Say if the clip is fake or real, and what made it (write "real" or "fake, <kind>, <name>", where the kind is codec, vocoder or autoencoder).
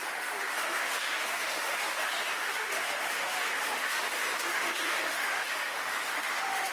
fake, autoencoder, DAC-VAE